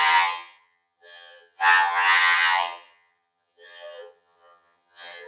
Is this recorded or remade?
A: remade